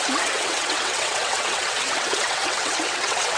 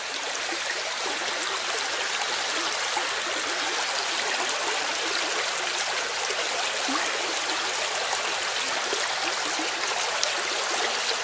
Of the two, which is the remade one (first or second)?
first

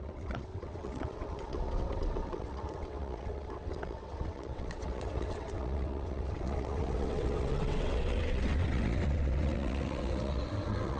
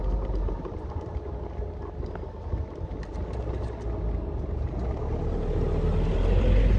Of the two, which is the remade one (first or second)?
first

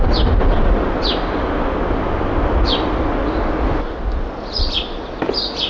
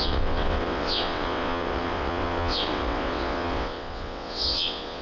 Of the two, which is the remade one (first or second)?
second